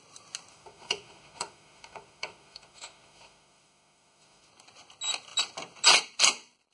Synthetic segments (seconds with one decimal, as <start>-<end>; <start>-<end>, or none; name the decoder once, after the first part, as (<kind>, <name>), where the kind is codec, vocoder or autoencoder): 0.5-4.5 (autoencoder, DAC-VAE)